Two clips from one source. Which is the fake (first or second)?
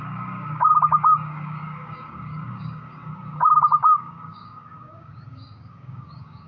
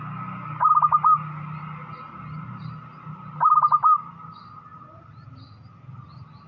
first